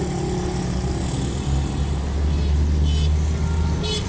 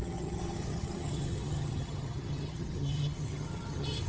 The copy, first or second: second